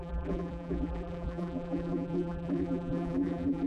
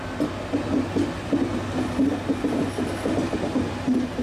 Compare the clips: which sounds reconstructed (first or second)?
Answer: first